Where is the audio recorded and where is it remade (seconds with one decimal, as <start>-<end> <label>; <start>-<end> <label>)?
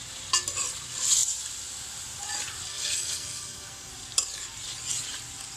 0.0-2.7 recorded; 2.7-3.9 remade; 3.9-5.6 recorded